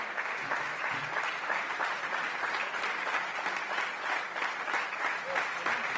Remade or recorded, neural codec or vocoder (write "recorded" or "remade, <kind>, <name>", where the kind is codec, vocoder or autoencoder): recorded